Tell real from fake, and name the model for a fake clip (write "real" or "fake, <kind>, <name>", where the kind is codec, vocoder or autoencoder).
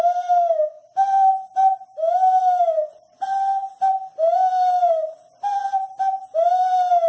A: real